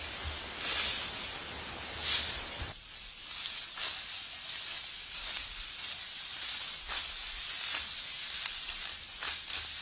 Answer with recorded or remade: recorded